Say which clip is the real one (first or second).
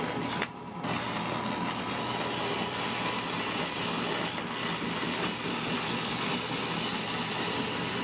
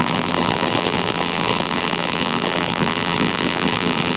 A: first